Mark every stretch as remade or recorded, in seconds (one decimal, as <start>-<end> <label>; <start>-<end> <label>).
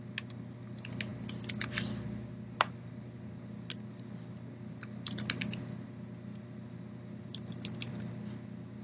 0.0-8.8 recorded